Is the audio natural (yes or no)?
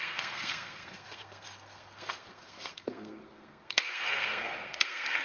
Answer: no